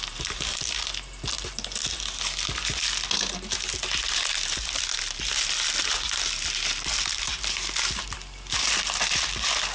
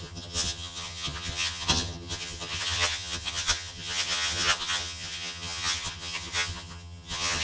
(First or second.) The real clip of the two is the first